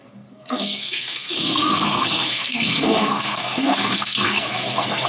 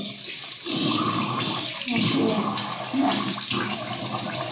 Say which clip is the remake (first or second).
first